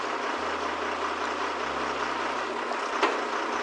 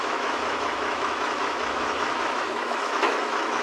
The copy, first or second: second